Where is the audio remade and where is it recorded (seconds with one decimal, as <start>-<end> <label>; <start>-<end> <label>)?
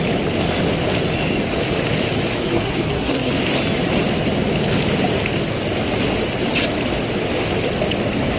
0.0-2.4 recorded; 2.4-3.3 remade; 3.3-8.4 recorded